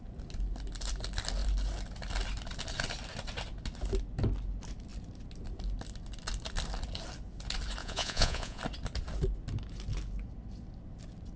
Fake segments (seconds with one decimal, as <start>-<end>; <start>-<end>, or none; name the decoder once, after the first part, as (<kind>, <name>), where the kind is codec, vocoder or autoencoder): 7.8-8.6 (vocoder, Vocos)